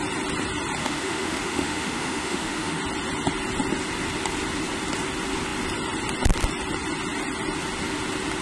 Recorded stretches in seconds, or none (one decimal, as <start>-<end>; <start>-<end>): 0.0-0.8; 2.8-8.4